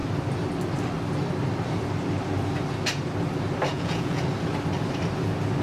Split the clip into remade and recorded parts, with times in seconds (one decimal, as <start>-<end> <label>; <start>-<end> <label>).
0.0-3.7 recorded; 3.7-4.2 remade; 4.2-5.6 recorded